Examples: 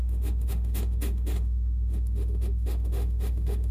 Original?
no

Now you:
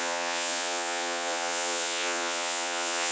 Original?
no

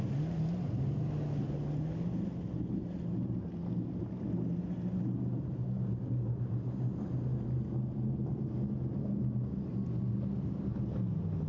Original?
yes